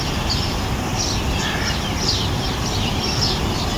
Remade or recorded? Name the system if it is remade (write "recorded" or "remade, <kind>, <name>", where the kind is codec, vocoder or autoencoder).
recorded